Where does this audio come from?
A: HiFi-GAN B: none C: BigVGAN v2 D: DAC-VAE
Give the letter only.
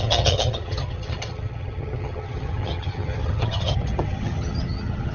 A